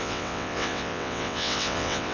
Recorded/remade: remade